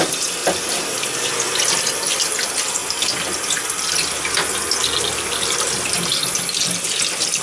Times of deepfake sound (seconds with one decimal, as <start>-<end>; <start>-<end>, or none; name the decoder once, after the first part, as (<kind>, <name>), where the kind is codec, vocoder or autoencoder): none